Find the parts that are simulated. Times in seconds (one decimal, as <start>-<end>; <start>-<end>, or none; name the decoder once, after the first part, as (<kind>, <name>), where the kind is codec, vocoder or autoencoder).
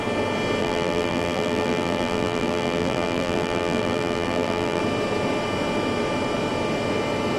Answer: 0.6-4.8 (vocoder, BigVGAN v2)